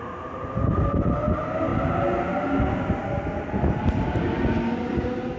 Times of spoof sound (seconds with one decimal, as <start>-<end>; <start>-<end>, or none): none